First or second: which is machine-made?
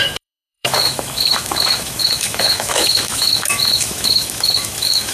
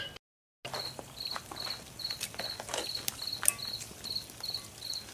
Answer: first